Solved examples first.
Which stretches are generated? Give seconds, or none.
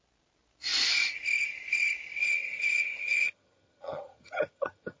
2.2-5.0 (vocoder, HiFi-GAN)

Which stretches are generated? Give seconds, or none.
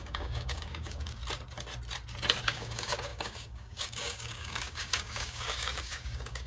0.0-1.2 (codec, DAC); 2.4-6.5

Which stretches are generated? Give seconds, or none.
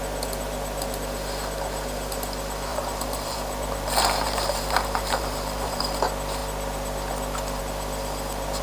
2.7-5.8 (vocoder, BigVGAN v2)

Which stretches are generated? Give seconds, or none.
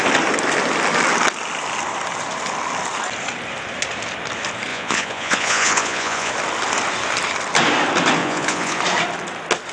4.7-6.3 (vocoder, Vocos); 8.2-8.8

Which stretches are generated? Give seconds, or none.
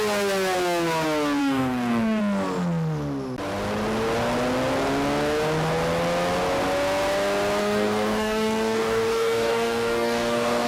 1.4-2.2 (codec, DAC); 7.6-10.7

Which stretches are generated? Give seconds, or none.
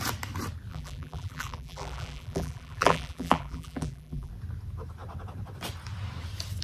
0.7-4.3 (vocoder, BigVGAN v2)